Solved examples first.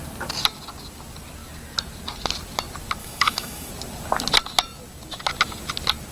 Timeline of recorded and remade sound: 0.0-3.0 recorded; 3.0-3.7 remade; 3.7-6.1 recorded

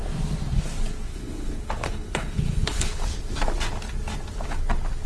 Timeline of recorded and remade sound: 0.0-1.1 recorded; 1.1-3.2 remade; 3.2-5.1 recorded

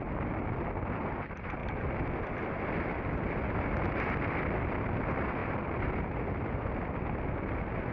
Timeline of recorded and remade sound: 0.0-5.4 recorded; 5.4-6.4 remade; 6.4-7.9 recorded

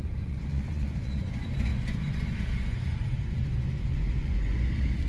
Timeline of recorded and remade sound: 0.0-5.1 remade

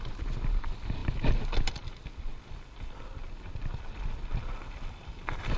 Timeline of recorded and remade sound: 0.0-5.6 recorded

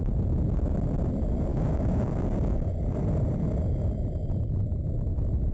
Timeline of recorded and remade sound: 0.0-1.5 recorded; 1.5-2.7 remade; 2.7-5.5 recorded